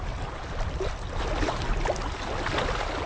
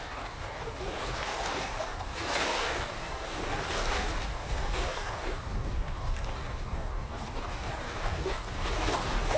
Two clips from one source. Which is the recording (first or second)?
first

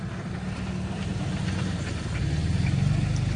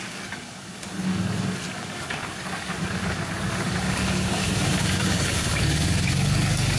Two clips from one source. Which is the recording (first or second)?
first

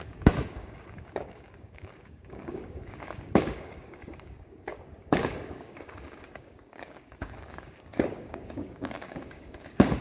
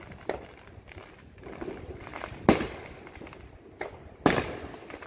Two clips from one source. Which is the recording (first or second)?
second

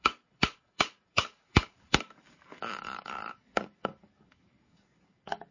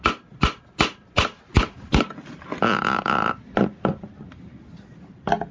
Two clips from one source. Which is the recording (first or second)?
second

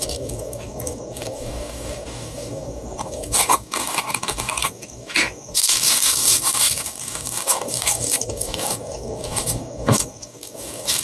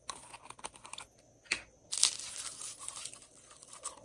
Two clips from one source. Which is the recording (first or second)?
second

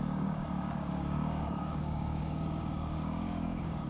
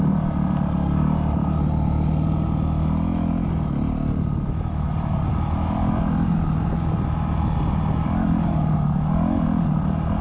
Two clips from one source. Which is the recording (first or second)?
second